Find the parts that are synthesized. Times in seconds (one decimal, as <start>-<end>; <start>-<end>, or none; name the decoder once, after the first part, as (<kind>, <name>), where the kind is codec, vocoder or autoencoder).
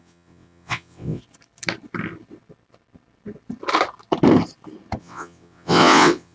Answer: 0.0-1.2 (vocoder, WaveNeXt); 5.0-6.3